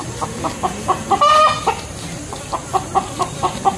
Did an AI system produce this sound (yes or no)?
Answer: no